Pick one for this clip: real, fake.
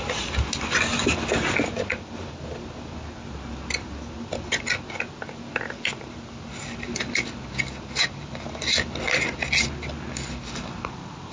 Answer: real